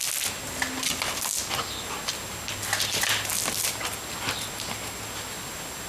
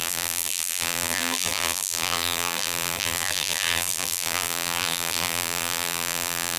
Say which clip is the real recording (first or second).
first